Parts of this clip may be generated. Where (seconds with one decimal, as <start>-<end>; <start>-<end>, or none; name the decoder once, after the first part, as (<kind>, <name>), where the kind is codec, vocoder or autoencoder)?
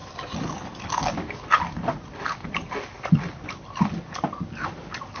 none